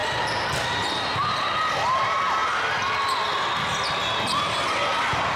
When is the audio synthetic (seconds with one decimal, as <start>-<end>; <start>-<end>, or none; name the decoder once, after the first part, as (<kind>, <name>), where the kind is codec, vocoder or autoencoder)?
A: none